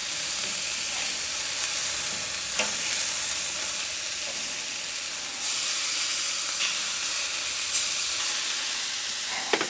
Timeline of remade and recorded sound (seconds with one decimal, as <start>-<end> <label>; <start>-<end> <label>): 0.0-9.7 recorded